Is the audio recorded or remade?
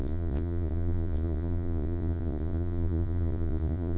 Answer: remade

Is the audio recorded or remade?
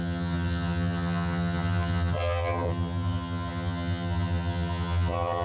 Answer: remade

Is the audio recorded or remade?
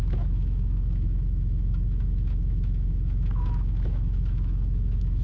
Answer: remade